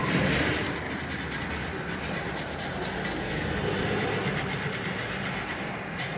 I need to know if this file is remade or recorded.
recorded